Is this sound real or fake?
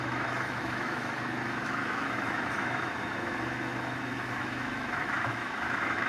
fake